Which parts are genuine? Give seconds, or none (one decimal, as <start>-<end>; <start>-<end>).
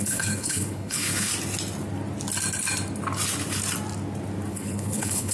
1.3-4.5